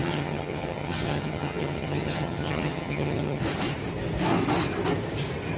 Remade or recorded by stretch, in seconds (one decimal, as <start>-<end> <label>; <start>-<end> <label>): 0.0-3.4 remade; 3.4-5.6 recorded